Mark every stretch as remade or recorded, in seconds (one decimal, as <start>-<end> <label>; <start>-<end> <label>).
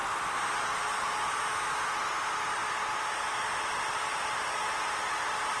0.0-5.6 recorded